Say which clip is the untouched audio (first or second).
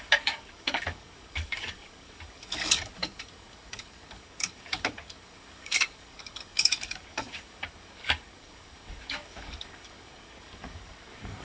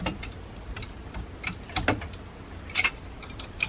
second